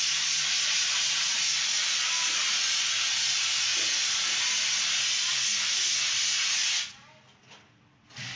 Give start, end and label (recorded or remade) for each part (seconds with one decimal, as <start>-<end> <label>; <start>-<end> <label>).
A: 0.0-8.4 recorded